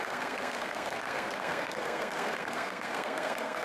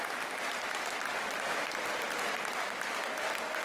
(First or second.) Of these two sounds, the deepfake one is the first